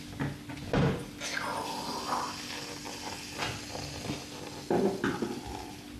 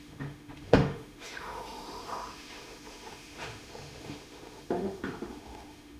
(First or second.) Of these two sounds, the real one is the first